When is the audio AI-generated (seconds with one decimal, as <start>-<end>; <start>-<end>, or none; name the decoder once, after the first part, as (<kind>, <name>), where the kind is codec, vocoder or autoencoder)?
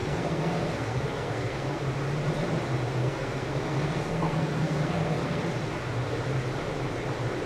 0.0-1.8 (codec, SNAC); 3.0-5.4